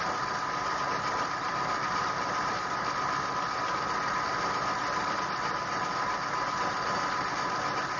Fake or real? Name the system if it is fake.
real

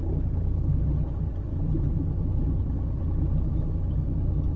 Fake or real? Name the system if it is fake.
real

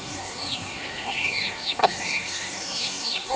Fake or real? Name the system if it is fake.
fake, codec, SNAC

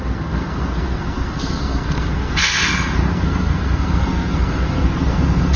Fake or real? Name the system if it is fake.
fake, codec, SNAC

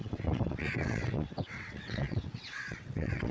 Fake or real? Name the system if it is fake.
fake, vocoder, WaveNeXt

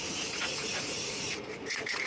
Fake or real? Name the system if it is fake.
fake, vocoder, Vocos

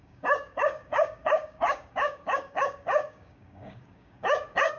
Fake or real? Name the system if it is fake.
fake, codec, DAC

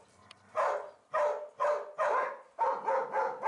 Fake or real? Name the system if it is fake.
real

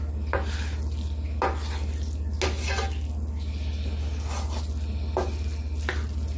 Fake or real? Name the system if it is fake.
real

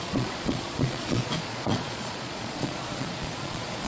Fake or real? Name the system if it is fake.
fake, vocoder, Vocos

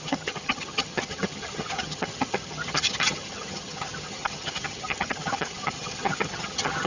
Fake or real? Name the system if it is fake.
fake, vocoder, HiFi-GAN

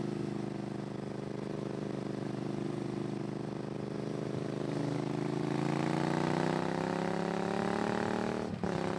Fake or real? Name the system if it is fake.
real